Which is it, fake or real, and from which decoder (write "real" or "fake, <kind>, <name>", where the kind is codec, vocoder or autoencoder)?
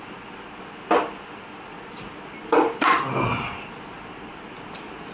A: real